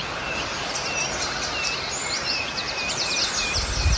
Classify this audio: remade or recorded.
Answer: recorded